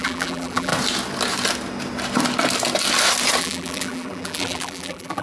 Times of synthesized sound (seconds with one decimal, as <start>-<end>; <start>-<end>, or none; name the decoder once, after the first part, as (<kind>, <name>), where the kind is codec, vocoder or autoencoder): 0.0-0.7 (vocoder, BigVGAN v2); 3.4-5.2